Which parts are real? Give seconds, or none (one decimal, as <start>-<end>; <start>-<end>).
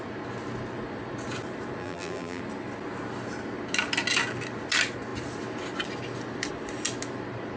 0.0-1.8; 2.4-7.6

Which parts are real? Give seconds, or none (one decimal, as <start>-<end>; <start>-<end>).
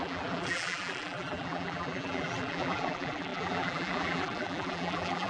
none